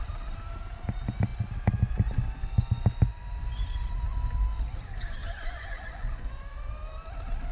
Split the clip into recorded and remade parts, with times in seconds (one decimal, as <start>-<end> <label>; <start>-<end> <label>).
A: 0.0-5.2 recorded; 5.2-6.3 remade; 6.3-7.5 recorded